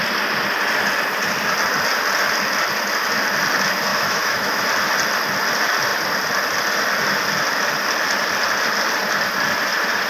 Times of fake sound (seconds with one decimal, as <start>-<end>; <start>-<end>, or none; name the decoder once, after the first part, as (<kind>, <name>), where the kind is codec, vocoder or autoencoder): 3.9-4.6 (autoencoder, DAC-VAE)